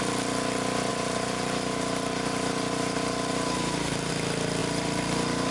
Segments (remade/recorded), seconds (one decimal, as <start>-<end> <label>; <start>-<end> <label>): 0.0-0.9 recorded; 0.9-4.1 remade; 4.1-4.6 recorded; 4.6-5.5 remade

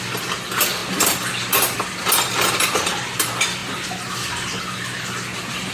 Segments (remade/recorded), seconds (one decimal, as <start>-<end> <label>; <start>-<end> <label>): 0.0-5.7 recorded

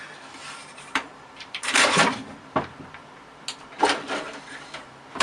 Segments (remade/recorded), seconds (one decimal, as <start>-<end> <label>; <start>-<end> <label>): 0.0-0.6 recorded; 0.6-2.8 remade; 2.8-5.2 recorded